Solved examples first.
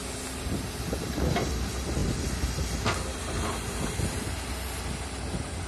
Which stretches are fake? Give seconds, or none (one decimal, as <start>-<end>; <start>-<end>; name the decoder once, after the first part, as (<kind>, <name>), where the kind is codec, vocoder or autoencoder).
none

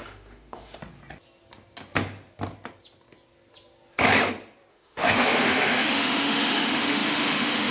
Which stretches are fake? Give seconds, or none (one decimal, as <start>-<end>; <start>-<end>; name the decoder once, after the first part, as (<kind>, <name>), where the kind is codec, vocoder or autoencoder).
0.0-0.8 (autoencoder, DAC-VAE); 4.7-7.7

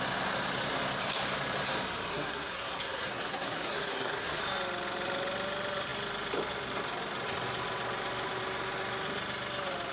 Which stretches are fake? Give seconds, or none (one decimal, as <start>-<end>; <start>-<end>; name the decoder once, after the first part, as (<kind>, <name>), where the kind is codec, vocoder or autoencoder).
2.1-4.4 (codec, SNAC)

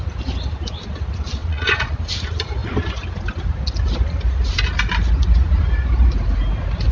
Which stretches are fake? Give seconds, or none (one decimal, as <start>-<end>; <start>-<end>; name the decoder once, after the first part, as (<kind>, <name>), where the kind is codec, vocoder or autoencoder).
1.4-2.0 (vocoder, Vocos)

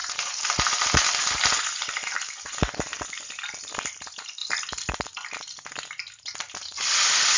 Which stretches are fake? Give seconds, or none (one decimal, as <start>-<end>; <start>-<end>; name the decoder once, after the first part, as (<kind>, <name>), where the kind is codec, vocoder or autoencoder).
none

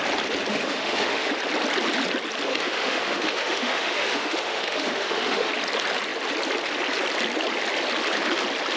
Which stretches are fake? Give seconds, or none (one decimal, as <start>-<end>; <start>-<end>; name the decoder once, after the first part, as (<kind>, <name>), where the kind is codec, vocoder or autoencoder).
0.5-1.3 (autoencoder, DAC-VAE); 2.5-5.5